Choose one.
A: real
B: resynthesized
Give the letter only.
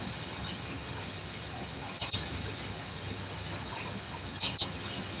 B